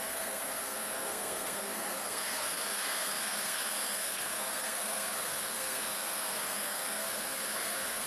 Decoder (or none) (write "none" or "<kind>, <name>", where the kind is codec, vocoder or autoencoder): codec, SNAC